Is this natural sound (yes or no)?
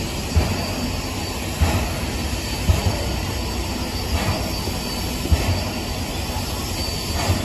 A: yes